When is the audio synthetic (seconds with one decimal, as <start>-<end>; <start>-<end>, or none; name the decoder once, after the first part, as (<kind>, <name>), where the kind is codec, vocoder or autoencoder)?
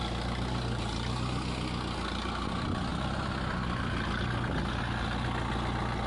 none